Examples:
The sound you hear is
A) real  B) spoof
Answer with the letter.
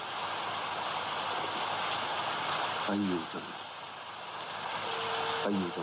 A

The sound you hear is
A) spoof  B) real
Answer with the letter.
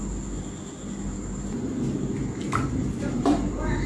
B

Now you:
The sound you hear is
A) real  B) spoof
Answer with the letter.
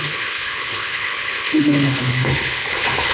B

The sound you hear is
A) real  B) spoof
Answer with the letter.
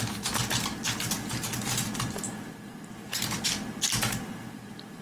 A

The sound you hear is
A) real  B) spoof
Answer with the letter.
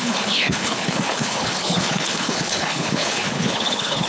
B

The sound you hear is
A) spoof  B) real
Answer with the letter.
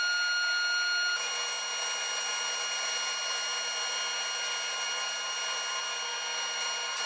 B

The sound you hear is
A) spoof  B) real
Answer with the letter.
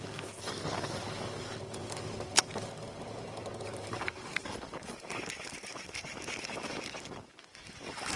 A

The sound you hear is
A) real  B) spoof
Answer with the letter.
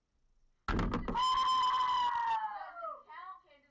A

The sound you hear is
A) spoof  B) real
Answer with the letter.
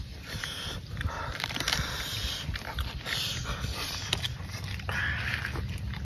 B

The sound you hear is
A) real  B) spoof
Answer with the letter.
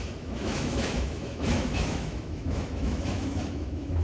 B